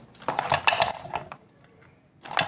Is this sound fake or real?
real